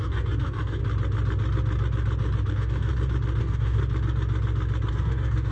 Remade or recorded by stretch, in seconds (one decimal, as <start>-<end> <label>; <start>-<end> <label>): 0.0-0.8 remade; 0.8-2.5 recorded; 2.5-2.9 remade; 2.9-3.4 recorded; 3.4-3.8 remade; 3.8-4.9 recorded; 4.9-5.5 remade